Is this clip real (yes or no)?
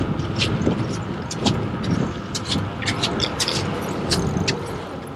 yes